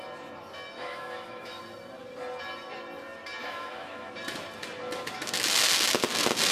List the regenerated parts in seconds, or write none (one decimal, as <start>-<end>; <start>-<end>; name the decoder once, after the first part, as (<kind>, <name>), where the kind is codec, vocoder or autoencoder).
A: 0.8-1.6 (autoencoder, DAC-VAE); 3.4-4.1